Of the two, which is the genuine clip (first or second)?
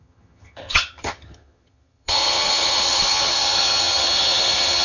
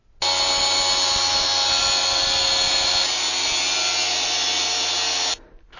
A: second